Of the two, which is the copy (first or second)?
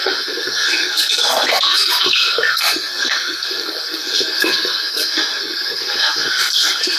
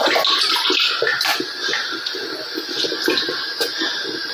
first